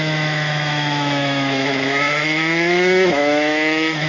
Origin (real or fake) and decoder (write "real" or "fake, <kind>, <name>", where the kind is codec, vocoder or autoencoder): fake, autoencoder, DAC-VAE